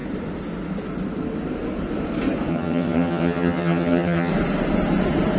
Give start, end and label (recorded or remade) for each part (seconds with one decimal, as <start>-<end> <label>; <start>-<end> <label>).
0.0-2.5 recorded; 2.5-4.3 remade; 4.3-5.4 recorded